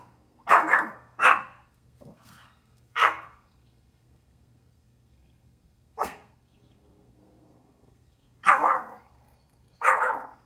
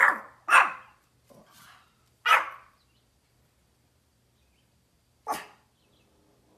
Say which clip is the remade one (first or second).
first